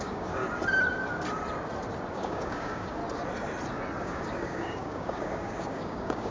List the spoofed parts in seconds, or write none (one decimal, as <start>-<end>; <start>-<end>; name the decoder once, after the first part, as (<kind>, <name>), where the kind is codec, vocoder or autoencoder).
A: 0.0-0.4 (codec, DAC); 2.1-3.0; 4.0-6.3